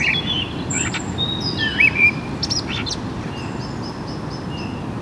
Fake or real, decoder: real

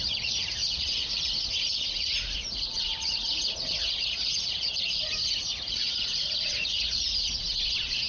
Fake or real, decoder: fake, vocoder, Vocos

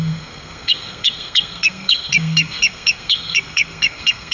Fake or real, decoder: fake, codec, SNAC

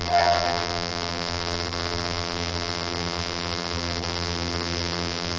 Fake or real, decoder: fake, vocoder, BigVGAN v2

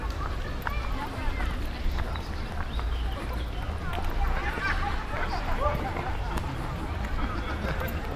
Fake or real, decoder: real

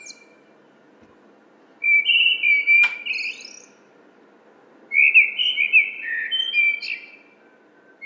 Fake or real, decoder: real